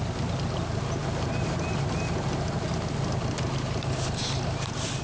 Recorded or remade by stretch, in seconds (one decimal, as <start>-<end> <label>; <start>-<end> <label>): 0.0-5.0 recorded